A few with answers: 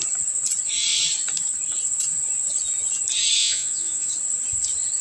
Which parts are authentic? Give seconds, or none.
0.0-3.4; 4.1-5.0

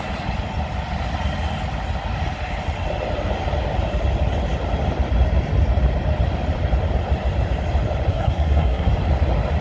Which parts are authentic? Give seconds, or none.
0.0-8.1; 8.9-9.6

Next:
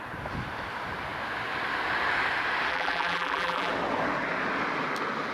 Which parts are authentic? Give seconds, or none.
0.0-2.7; 3.7-5.3